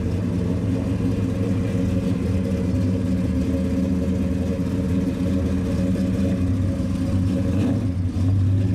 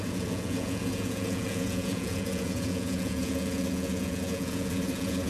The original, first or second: first